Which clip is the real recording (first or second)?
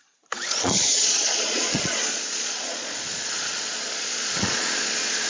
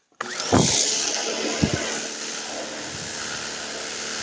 second